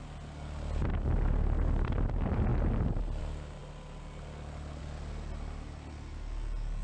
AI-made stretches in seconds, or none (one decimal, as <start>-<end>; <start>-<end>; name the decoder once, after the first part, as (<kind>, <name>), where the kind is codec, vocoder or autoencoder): none